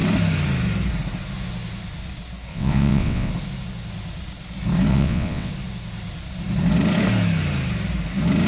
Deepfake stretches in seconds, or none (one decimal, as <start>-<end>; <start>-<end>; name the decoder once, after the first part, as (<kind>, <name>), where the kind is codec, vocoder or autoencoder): 2.5-3.3 (vocoder, WaveNeXt); 4.9-5.5